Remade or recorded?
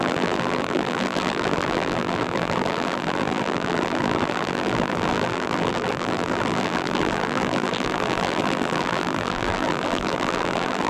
remade